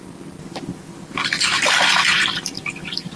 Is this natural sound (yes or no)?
yes